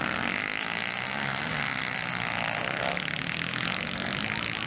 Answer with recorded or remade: recorded